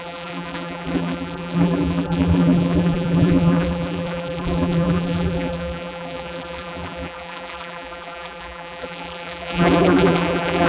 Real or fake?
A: fake